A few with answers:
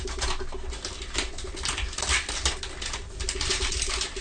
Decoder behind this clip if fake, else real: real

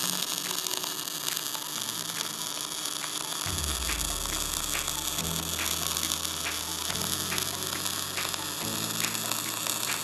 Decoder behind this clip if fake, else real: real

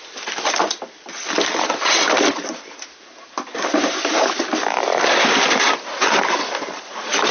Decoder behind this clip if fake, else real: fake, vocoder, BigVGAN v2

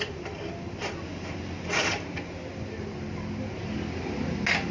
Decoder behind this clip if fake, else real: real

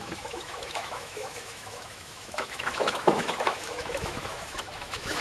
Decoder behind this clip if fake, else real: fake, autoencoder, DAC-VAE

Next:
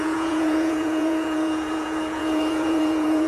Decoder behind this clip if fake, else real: fake, vocoder, Vocos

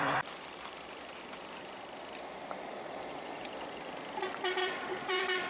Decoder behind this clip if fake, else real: fake, vocoder, BigVGAN v2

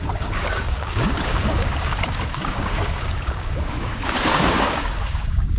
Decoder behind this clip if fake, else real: fake, codec, DAC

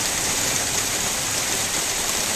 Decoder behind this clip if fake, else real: fake, vocoder, BigVGAN v2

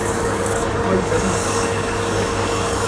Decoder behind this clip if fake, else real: fake, codec, DAC